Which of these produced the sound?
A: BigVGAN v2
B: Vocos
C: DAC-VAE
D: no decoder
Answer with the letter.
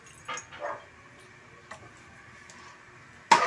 D